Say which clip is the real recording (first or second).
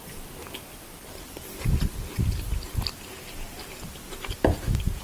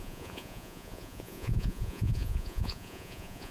first